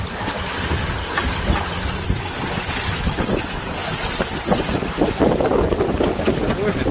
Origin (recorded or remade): recorded